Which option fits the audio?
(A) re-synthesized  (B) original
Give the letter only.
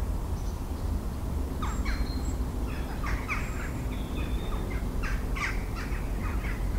B